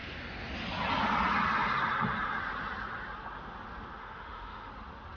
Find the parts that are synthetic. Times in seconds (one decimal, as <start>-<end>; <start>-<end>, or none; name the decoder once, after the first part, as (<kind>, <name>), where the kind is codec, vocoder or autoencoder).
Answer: 4.0-4.7 (autoencoder, DAC-VAE)